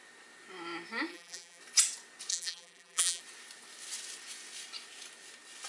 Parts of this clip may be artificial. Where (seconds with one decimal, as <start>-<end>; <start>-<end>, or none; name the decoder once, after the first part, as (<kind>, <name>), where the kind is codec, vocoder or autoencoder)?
1.1-1.6 (vocoder, BigVGAN v2); 2.3-3.2